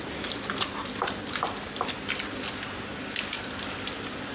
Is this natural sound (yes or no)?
yes